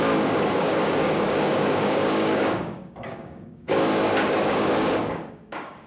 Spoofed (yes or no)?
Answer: yes